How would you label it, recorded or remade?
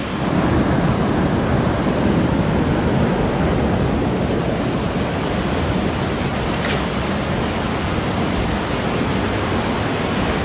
recorded